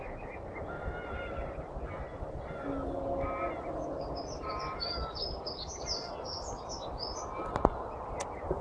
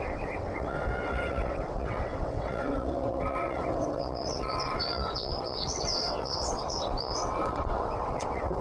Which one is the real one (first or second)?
first